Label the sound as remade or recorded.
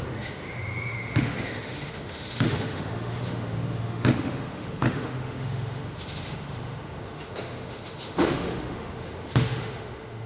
remade